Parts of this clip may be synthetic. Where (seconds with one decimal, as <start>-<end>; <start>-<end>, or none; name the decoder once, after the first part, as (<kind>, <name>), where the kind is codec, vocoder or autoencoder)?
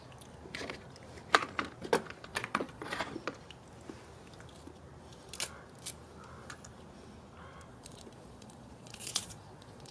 2.3-3.0 (vocoder, Vocos); 7.7-9.9